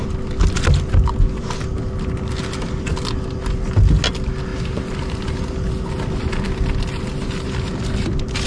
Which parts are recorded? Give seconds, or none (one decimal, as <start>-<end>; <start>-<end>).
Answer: 0.0-8.5